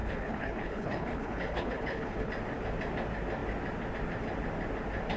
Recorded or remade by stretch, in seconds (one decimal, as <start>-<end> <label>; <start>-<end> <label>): 0.0-2.3 remade; 2.3-5.2 recorded